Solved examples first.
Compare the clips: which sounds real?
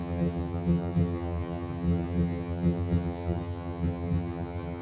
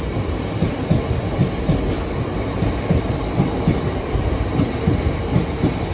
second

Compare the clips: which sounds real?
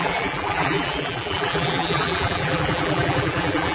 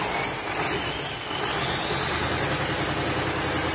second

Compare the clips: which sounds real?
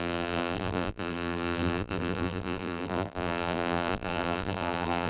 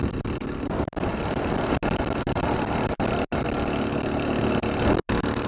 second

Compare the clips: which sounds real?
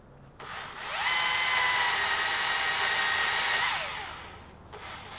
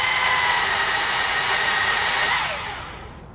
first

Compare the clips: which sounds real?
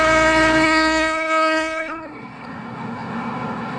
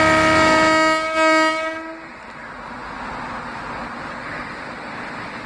second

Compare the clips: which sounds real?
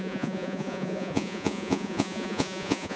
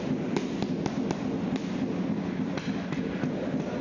second